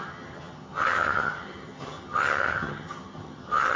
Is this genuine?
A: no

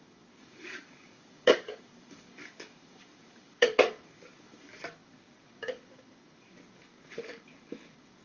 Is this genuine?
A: no